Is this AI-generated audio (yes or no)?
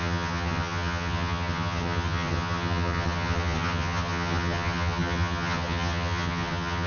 yes